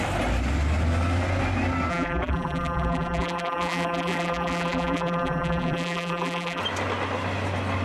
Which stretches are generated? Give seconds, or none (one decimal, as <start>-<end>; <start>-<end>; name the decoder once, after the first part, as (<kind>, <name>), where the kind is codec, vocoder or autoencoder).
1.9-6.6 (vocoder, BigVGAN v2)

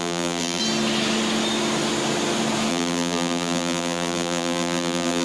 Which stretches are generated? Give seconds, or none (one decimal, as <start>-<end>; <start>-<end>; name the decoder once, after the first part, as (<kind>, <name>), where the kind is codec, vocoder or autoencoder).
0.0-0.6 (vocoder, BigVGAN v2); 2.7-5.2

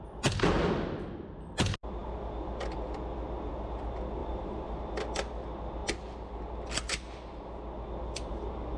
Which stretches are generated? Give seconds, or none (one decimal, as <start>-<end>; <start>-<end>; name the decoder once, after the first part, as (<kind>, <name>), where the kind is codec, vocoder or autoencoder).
4.2-4.8 (vocoder, BigVGAN v2)